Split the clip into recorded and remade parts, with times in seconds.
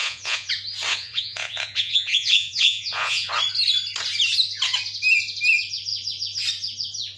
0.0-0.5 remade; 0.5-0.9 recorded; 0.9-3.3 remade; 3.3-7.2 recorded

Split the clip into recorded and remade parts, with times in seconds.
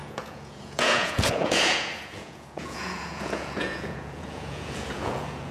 0.0-5.5 remade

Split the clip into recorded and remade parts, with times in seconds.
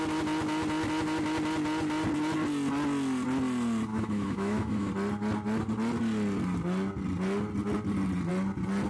0.0-3.9 recorded; 3.9-4.9 remade; 4.9-8.9 recorded